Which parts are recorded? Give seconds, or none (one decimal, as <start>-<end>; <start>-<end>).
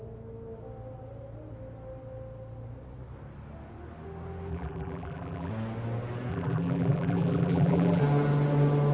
0.0-4.5; 5.5-6.3; 8.0-8.9